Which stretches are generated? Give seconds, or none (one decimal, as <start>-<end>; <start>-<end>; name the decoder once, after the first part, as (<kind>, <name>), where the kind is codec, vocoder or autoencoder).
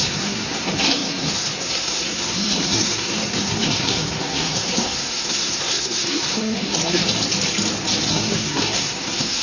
0.0-7.0 (codec, SNAC); 8.1-9.4